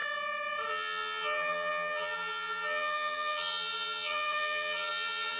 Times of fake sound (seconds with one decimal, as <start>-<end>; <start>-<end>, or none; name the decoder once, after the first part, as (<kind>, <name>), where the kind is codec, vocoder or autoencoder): 0.7-5.4 (vocoder, HiFi-GAN)